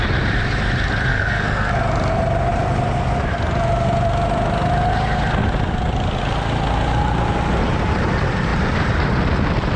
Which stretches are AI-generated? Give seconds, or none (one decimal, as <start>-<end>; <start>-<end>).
1.1-1.7